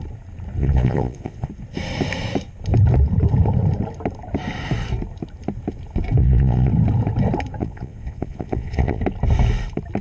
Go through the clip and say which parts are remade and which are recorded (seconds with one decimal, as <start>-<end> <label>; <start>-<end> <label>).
0.0-0.6 recorded; 0.6-1.5 remade; 1.5-6.2 recorded; 6.2-6.7 remade; 6.7-7.6 recorded; 7.6-9.0 remade; 9.0-10.0 recorded